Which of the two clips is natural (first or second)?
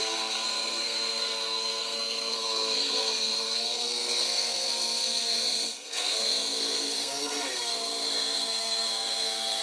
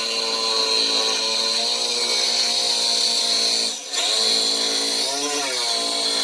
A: second